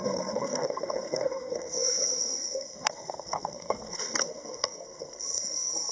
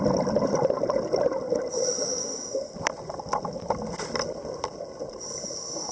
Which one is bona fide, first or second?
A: second